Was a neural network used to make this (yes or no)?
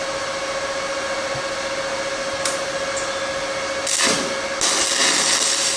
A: no